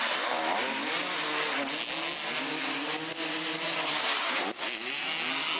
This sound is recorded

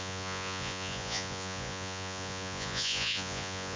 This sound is remade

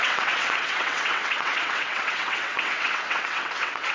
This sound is remade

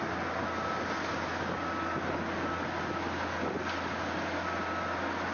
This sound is recorded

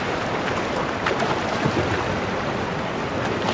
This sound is recorded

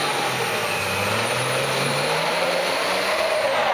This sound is recorded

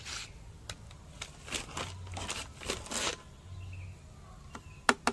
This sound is recorded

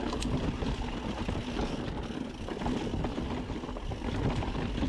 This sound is recorded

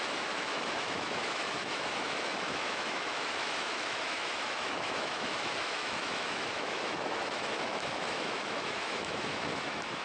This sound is remade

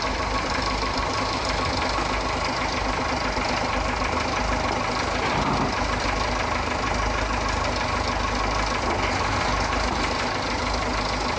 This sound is recorded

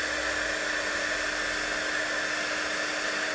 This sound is recorded